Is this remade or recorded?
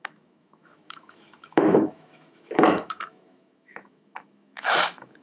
remade